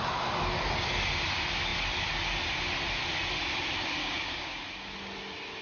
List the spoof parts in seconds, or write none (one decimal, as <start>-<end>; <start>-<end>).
4.0-4.6